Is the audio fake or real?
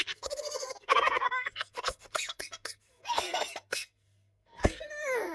fake